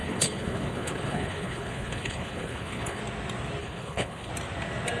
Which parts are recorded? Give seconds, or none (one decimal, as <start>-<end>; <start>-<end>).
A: 3.0-3.6; 4.3-5.0